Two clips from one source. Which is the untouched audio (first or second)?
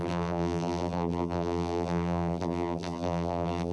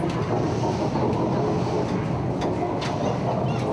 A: second